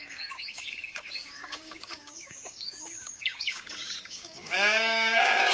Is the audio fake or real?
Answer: fake